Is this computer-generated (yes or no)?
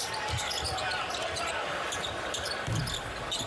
no